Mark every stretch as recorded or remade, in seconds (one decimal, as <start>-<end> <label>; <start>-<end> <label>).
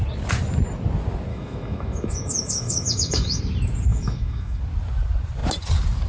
0.0-1.3 recorded; 1.3-3.4 remade; 3.4-3.9 recorded; 3.9-4.6 remade; 4.6-6.1 recorded